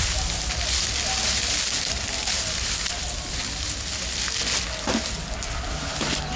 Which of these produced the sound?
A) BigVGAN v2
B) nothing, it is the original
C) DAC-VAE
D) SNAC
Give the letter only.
B